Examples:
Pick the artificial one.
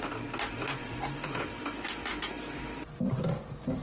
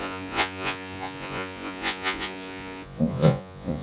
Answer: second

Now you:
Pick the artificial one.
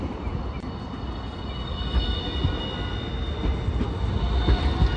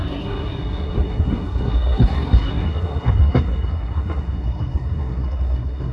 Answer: second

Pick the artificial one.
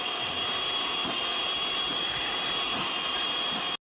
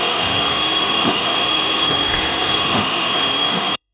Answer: second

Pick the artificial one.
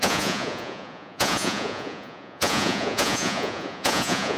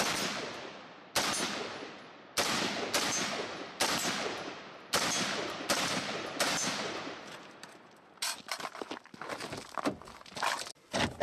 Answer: first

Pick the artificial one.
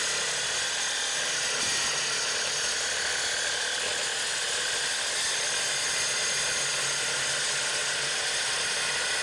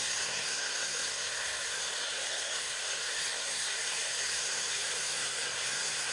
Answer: second